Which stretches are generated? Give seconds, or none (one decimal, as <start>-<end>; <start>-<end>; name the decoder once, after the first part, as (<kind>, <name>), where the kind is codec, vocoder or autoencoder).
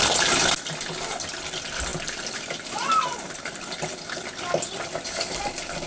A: none